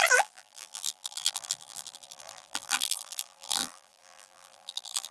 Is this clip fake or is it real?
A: fake